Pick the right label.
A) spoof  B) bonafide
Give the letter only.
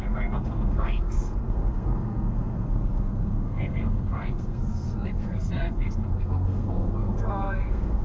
A